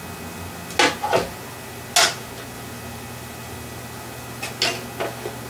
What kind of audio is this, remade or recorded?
recorded